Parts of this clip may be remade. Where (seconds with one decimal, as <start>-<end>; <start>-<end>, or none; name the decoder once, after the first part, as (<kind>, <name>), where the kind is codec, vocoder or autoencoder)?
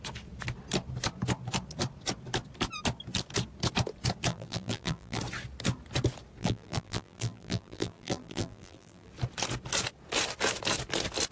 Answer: 4.3-5.2 (vocoder, BigVGAN v2); 6.4-9.1